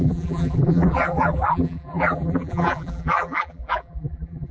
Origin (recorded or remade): remade